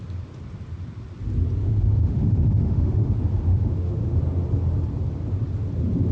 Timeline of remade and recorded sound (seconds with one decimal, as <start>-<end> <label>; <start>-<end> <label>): 0.0-1.6 recorded; 1.6-3.1 remade; 3.1-3.5 recorded; 3.5-4.2 remade; 4.2-6.1 recorded